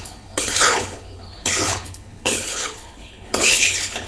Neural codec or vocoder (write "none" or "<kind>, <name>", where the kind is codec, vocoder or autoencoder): codec, HILCodec